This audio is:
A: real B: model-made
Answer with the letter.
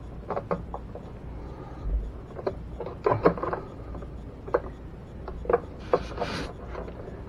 A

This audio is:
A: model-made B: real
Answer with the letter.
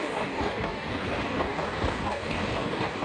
A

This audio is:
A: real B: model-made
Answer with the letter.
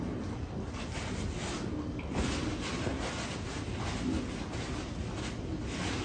A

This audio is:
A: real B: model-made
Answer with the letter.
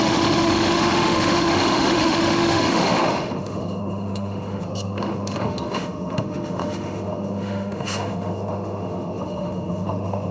B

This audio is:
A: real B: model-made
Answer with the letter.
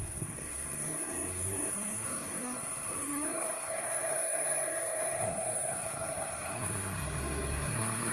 B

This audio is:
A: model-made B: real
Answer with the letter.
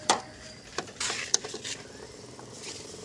A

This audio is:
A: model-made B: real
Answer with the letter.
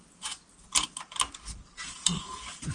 B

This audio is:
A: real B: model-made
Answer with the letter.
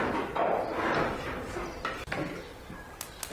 A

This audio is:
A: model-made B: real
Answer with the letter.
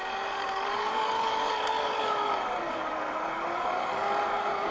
A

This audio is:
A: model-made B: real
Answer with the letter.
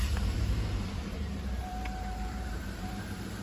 A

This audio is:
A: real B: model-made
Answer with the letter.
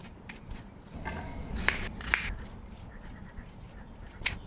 A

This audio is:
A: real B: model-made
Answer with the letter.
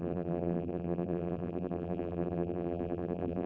B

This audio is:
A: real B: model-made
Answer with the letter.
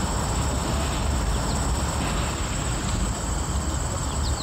A